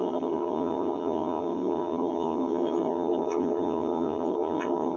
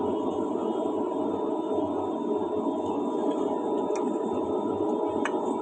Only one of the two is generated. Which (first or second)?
first